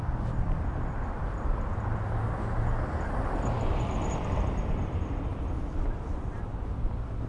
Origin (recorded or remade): recorded